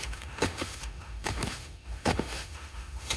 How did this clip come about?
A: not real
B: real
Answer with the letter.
A